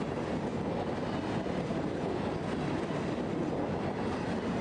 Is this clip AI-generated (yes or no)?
no